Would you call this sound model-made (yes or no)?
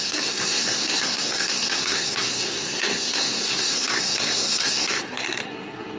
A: yes